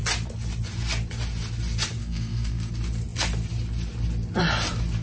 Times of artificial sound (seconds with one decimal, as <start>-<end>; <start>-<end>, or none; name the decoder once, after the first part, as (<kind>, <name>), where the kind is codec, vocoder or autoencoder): 2.0-2.7 (codec, SNAC)